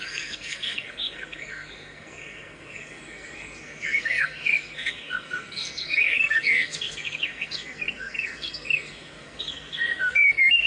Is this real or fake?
fake